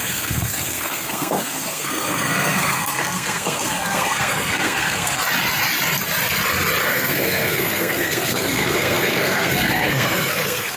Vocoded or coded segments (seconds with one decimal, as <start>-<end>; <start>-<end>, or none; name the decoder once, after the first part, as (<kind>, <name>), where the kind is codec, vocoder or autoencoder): 0.0-5.2 (codec, SNAC); 6.8-10.8